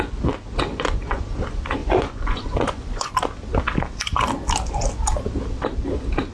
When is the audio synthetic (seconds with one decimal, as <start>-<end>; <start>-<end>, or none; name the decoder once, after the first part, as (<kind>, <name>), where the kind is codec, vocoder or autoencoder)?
0.7-1.2 (vocoder, Vocos); 1.8-3.1